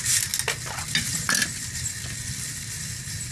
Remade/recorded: recorded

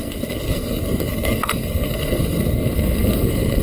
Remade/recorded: remade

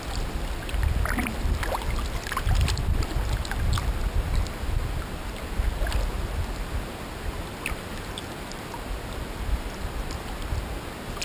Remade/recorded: recorded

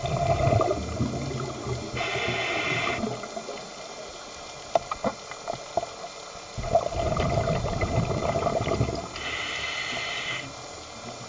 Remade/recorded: recorded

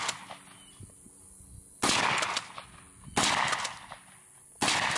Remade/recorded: recorded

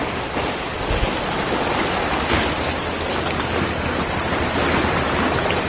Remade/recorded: recorded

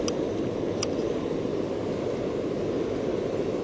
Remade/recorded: recorded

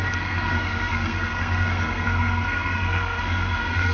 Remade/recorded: remade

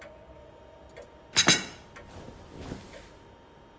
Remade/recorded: recorded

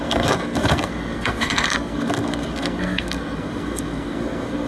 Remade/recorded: remade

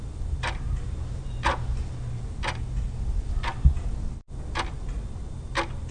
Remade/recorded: recorded